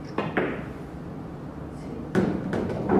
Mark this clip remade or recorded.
recorded